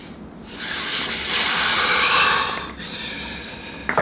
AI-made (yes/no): no